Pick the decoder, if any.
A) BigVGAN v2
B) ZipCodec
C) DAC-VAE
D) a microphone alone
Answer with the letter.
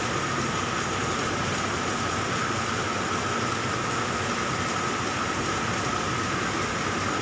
D